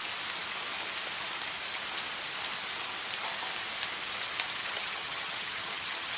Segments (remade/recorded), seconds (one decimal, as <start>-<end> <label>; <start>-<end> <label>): 0.0-4.6 recorded; 4.6-6.2 remade